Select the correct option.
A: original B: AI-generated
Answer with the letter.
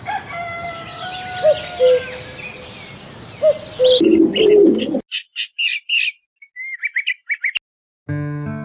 A